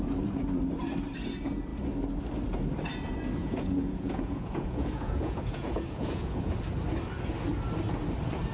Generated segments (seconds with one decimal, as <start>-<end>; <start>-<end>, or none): 3.4-6.5